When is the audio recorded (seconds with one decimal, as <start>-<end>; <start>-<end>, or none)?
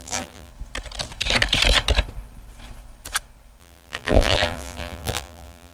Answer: 0.5-3.6